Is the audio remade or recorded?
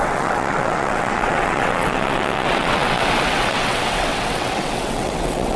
remade